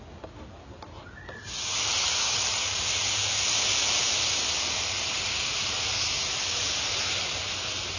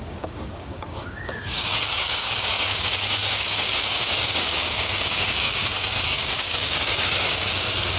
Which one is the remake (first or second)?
second